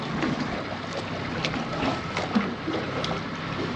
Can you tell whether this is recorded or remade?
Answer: recorded